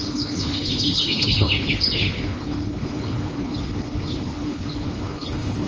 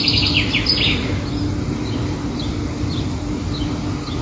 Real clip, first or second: second